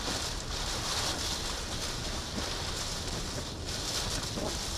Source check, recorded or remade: recorded